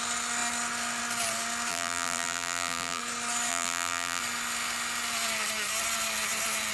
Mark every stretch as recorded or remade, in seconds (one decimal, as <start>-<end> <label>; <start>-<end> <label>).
0.0-1.7 recorded; 1.7-3.0 remade; 3.0-3.5 recorded; 3.5-4.2 remade; 4.2-6.7 recorded